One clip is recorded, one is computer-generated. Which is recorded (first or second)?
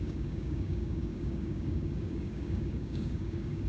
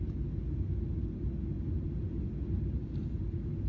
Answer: second